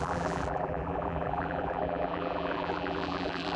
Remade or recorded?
remade